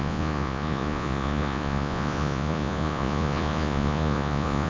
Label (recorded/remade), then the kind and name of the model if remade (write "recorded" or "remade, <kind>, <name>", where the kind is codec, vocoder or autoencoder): remade, vocoder, Vocos